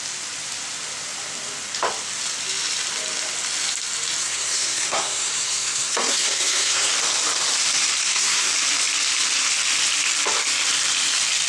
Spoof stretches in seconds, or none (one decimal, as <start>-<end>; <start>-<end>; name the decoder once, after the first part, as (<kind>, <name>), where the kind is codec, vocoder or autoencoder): 4.2-6.9 (codec, SNAC); 8.0-8.5